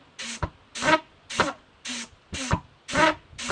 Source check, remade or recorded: recorded